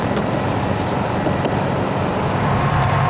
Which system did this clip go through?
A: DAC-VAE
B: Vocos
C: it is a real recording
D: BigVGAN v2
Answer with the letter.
C